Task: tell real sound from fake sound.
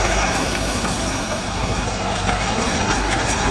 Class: fake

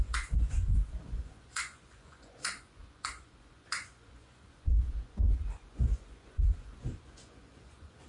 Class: fake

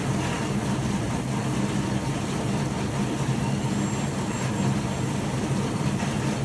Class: real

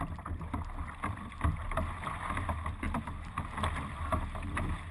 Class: real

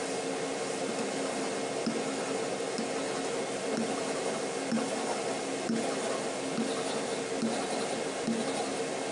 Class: real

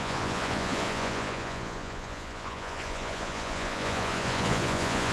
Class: fake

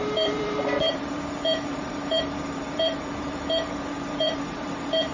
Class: fake